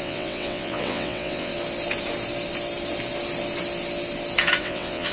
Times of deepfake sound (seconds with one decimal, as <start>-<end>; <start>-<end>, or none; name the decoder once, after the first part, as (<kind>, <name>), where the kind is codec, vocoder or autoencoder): 0.0-1.5 (vocoder, WaveNeXt); 4.6-5.1